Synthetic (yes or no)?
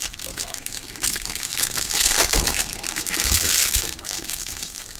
yes